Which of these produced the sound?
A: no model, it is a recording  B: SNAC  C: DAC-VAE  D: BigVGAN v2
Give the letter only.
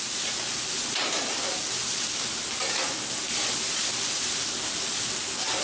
A